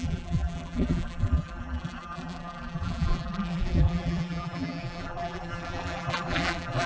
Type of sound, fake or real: fake